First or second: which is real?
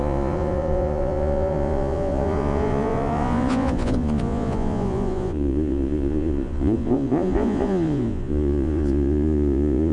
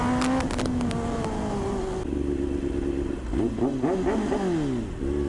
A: second